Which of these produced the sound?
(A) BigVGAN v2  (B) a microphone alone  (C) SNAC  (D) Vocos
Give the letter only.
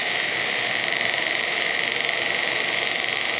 A